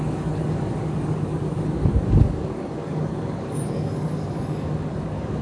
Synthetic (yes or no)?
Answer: yes